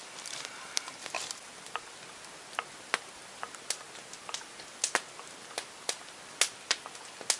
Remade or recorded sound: recorded